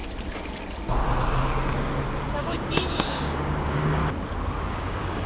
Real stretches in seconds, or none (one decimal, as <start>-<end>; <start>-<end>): 0.0-2.2; 4.0-4.7